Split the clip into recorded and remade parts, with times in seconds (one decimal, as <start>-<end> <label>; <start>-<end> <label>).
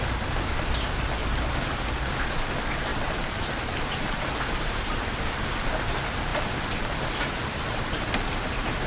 0.0-1.2 recorded; 1.2-1.7 remade; 1.7-2.9 recorded; 2.9-4.8 remade; 4.8-6.3 recorded; 6.3-8.1 remade; 8.1-8.9 recorded